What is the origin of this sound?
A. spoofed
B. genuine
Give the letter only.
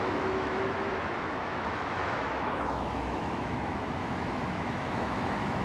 A